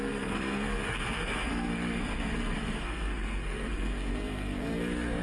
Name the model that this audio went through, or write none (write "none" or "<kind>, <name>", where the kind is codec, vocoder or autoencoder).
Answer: codec, SNAC